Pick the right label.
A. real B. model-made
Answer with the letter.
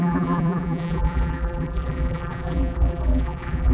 B